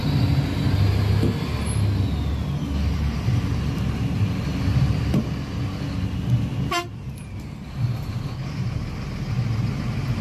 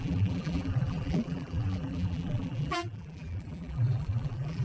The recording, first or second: first